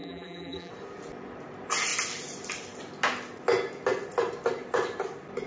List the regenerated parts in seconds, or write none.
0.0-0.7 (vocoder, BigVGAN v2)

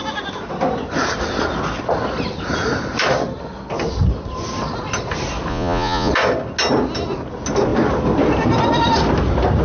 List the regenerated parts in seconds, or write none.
5.5-6.1 (vocoder, Vocos)